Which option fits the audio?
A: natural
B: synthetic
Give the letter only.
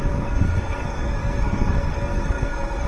B